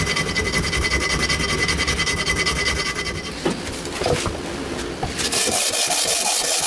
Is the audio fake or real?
real